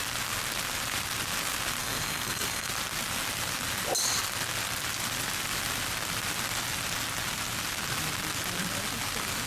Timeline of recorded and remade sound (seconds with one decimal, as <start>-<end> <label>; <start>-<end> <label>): 0.0-1.8 recorded; 1.8-2.7 remade; 2.7-9.5 recorded